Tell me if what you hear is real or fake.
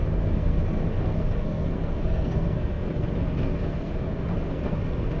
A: fake